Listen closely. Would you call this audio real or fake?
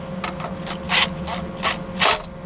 real